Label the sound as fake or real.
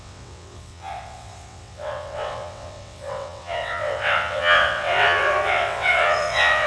fake